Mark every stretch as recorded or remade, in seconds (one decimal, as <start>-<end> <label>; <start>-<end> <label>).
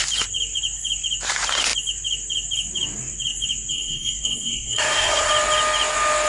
0.0-3.7 recorded; 3.7-5.3 remade; 5.3-6.3 recorded